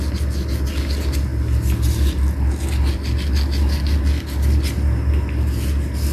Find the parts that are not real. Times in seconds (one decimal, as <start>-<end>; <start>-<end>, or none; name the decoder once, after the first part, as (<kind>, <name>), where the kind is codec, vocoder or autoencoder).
none